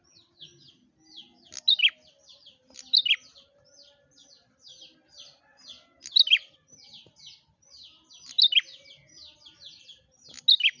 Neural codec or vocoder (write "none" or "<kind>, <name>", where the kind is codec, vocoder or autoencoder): none